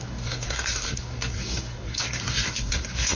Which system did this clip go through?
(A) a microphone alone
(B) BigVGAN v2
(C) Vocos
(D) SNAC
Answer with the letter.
D